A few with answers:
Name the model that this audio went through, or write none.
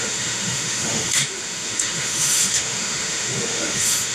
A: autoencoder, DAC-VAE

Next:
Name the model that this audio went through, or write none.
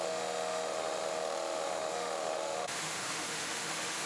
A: autoencoder, DAC-VAE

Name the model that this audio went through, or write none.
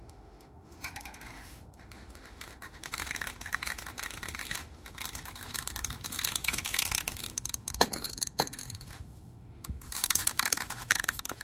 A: autoencoder, DAC-VAE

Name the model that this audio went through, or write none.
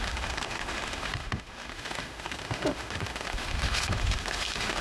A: autoencoder, DAC-VAE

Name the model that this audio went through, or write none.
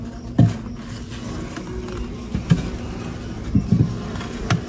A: none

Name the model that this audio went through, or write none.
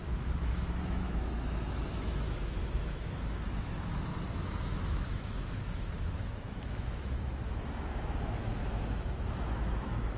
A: autoencoder, DAC-VAE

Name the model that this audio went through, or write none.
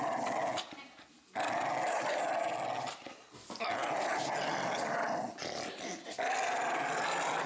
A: none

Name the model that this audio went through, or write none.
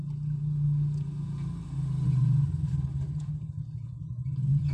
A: none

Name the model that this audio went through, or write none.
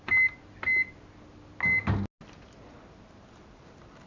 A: none